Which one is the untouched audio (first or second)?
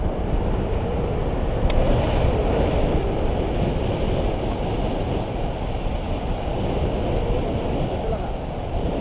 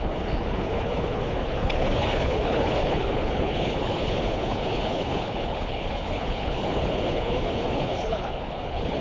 first